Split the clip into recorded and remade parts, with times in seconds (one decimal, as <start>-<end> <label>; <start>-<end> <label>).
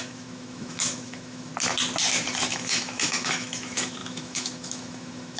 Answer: 0.0-1.5 remade; 1.5-2.5 recorded; 2.5-5.4 remade